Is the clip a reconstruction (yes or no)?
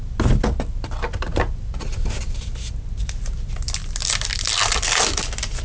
no